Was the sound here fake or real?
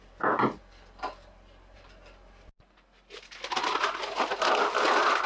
real